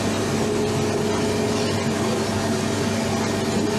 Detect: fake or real real